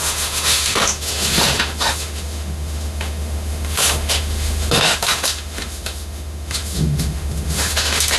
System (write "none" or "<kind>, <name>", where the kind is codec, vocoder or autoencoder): autoencoder, DAC-VAE